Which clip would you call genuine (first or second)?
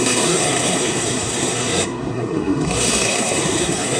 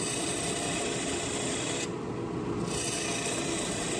second